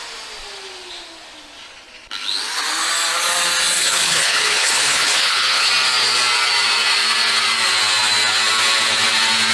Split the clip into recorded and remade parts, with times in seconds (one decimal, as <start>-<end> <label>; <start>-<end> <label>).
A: 0.0-3.8 recorded; 3.8-5.7 remade; 5.7-9.5 recorded